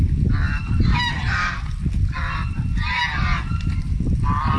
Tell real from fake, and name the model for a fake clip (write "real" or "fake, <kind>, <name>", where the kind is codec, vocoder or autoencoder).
real